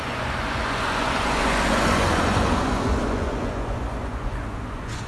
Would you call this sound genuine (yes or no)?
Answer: no